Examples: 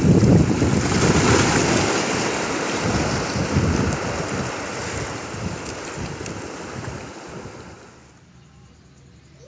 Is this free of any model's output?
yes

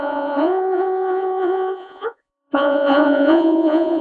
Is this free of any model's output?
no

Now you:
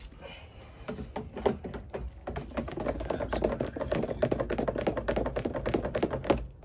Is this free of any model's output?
yes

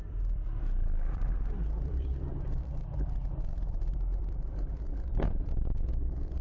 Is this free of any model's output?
no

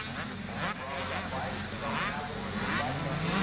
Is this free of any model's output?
yes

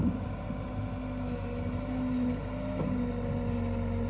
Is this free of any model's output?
yes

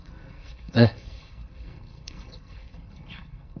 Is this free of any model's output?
no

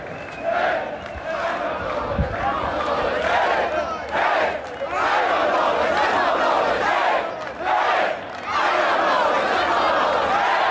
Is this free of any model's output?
yes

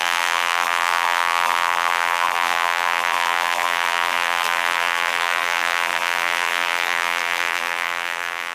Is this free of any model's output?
no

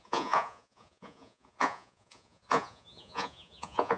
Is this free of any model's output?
no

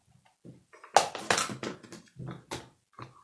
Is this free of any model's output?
yes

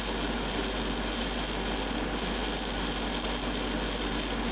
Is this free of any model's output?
yes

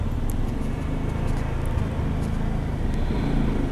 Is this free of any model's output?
yes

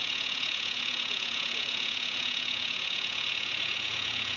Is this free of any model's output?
no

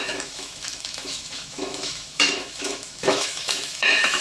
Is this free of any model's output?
no